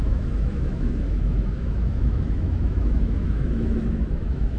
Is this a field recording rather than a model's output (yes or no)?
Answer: no